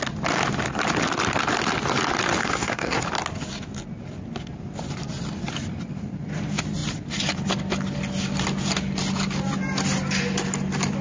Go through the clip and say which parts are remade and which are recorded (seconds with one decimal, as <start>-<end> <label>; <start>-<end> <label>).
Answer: 0.0-2.4 recorded; 2.4-3.0 remade; 3.0-11.0 recorded